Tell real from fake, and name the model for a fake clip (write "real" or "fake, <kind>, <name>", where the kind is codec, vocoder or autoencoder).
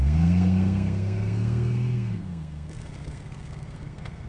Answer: fake, codec, SNAC